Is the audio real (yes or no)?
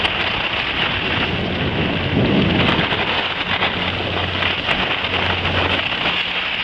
yes